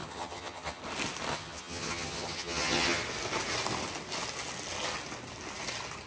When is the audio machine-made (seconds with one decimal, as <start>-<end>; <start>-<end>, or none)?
0.0-0.8; 1.3-3.0